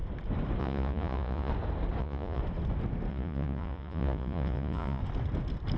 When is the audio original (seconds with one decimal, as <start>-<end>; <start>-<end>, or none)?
0.0-0.6; 1.5-2.0; 2.4-3.1; 5.0-5.8